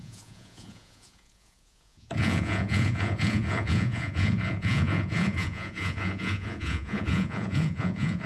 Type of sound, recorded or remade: remade